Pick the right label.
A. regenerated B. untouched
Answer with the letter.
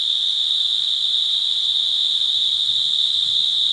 A